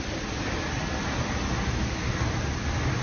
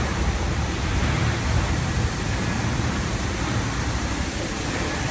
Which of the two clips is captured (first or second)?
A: first